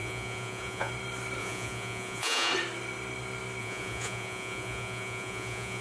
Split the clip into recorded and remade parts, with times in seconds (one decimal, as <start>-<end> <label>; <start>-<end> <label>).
0.0-0.9 remade; 0.9-1.4 recorded; 1.4-2.5 remade; 2.5-3.6 recorded; 3.6-5.8 remade

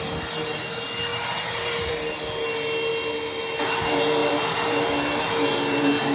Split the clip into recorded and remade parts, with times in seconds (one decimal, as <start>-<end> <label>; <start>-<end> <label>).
0.0-1.1 recorded; 1.1-1.9 remade; 1.9-4.2 recorded; 4.2-4.9 remade; 4.9-6.1 recorded

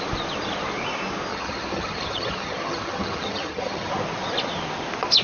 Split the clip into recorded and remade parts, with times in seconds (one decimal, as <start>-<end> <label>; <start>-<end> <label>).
0.0-1.3 recorded; 1.3-3.9 remade; 3.9-5.2 recorded

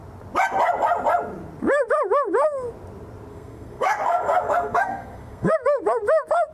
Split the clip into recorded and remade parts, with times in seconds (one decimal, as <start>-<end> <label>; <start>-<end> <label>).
0.0-3.3 recorded; 3.3-5.5 remade; 5.5-6.5 recorded